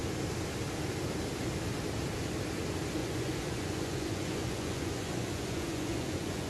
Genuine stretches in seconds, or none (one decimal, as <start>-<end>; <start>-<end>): 0.0-3.0

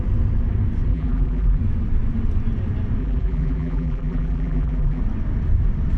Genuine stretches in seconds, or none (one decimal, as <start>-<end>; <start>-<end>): 0.0-0.9; 1.6-3.0; 5.0-6.0

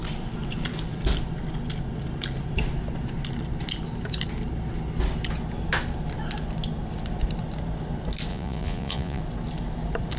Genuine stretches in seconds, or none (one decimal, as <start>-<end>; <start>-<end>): 0.0-8.3; 9.2-10.2

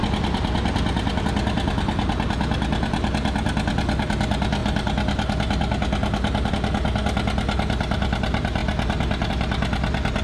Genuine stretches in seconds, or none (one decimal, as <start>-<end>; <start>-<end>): 0.0-10.2

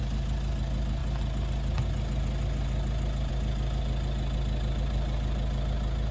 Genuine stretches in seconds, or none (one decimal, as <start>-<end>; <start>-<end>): 0.0-6.1

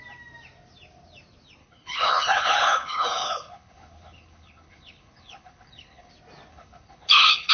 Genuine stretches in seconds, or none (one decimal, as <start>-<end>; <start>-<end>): 0.0-1.6; 6.1-6.5

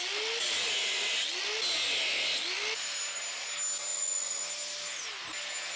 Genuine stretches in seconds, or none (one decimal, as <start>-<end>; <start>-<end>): 0.0-3.9; 4.4-5.8